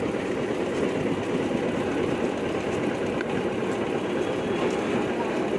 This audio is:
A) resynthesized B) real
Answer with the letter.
B